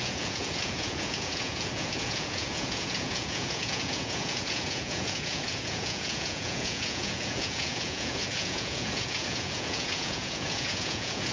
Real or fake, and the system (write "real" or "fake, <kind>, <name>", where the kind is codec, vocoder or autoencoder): fake, vocoder, Vocos